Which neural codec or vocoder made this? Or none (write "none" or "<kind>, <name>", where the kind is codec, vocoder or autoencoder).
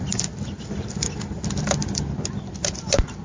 none